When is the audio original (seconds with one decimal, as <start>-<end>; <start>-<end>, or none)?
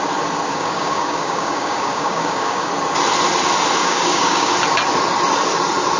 0.0-0.5; 2.7-3.8; 4.5-6.0